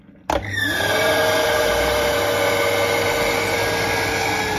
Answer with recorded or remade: recorded